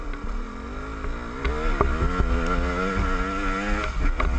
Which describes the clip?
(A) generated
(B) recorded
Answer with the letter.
B